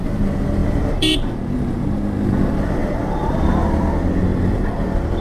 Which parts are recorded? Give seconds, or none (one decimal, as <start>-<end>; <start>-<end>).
0.0-0.6; 1.3-2.8; 3.5-4.3